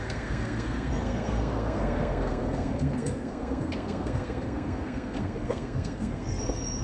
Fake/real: fake